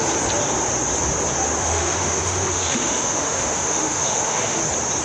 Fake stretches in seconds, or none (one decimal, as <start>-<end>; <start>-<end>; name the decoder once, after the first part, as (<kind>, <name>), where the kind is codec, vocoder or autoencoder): 1.6-4.6 (autoencoder, DAC-VAE)